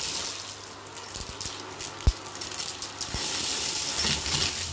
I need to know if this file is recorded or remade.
recorded